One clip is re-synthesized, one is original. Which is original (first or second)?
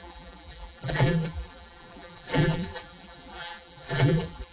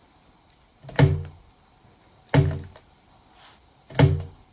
second